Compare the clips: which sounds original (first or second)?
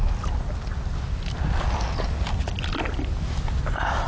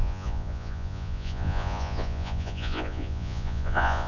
first